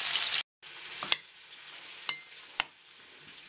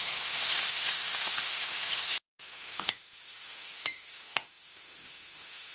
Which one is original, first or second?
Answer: first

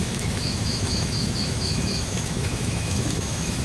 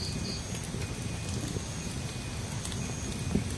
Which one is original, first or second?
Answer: second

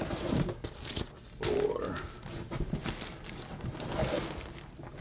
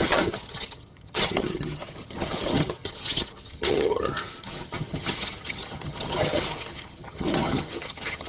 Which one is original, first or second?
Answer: first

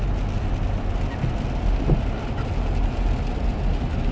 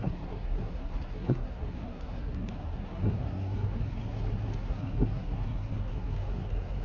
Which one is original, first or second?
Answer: first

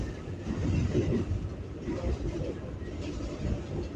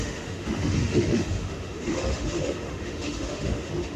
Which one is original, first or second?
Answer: first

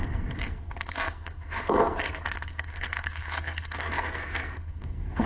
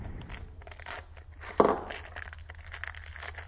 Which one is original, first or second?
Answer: second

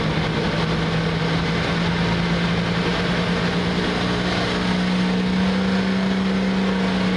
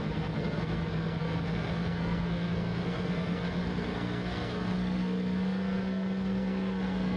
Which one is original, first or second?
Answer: first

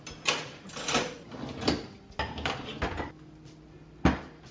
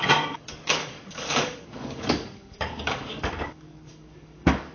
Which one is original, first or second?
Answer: first